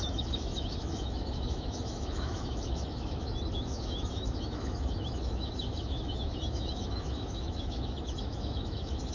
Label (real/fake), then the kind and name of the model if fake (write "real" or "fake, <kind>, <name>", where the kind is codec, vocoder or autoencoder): fake, autoencoder, DAC-VAE